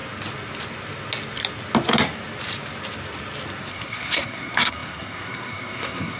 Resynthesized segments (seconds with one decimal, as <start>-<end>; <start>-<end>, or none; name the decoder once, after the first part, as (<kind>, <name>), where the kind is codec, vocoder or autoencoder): 3.7-6.2 (codec, SNAC)